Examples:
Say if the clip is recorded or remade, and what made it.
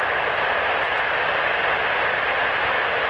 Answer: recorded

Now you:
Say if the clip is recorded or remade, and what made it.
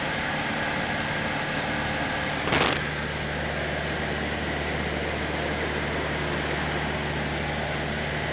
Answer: recorded